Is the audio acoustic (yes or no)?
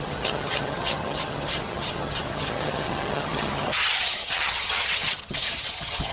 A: no